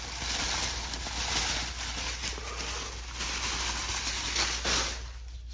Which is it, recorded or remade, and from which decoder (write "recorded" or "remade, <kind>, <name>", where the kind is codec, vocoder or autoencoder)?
recorded